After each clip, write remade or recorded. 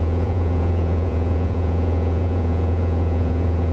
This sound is remade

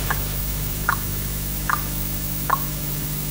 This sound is remade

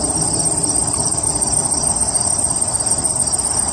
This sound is recorded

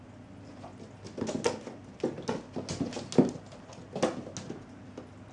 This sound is recorded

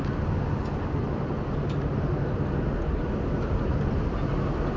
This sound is recorded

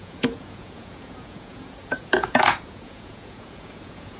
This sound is remade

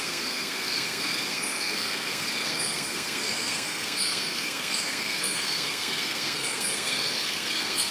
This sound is remade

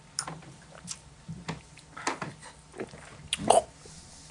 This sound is recorded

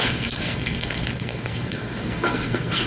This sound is remade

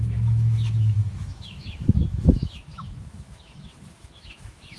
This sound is remade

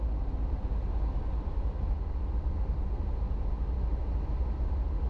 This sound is recorded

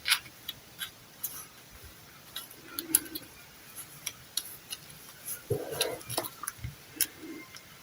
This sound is recorded